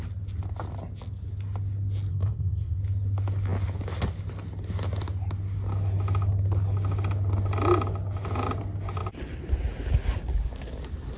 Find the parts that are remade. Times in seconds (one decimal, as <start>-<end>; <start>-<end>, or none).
2.1-2.8